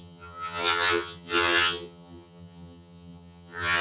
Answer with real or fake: fake